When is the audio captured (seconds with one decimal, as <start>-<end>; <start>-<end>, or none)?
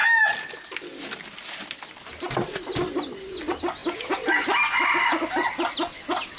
0.0-6.4